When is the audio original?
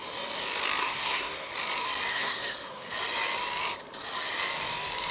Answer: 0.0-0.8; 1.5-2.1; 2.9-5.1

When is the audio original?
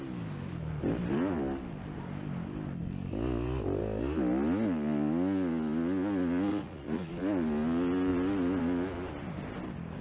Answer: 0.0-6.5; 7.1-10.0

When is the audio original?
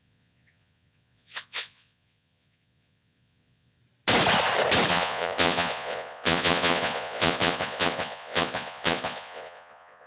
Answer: 3.8-4.9